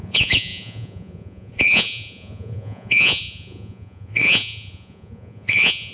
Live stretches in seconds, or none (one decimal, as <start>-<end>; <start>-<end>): none